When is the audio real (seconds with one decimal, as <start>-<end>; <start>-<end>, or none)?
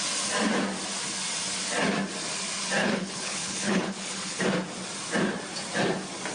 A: 0.0-2.8; 4.4-6.3